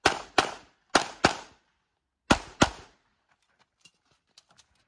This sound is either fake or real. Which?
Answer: real